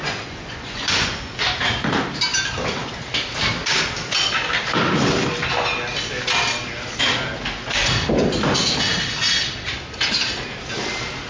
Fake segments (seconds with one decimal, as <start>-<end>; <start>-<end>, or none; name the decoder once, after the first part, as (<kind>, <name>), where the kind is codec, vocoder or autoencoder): 0.0-1.5 (vocoder, Vocos)